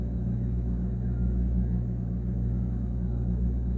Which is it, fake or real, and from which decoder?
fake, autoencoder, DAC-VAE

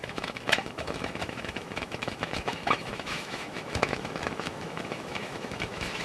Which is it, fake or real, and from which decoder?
fake, autoencoder, DAC-VAE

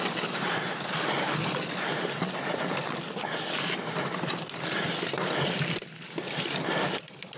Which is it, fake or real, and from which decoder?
real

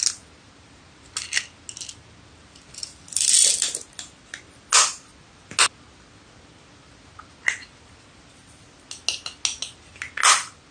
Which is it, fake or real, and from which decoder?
real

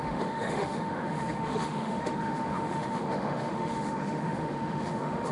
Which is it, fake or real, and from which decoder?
fake, autoencoder, DAC-VAE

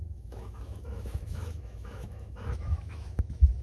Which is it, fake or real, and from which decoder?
fake, autoencoder, DAC-VAE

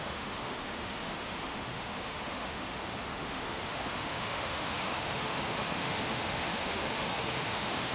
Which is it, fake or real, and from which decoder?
fake, autoencoder, DAC-VAE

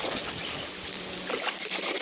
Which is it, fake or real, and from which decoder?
real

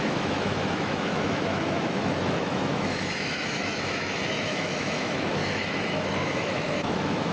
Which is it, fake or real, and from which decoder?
fake, autoencoder, DAC-VAE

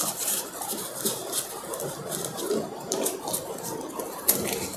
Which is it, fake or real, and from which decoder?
real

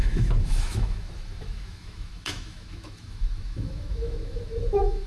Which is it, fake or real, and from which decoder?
fake, autoencoder, DAC-VAE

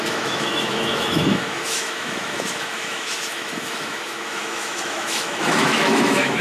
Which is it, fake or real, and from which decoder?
fake, autoencoder, DAC-VAE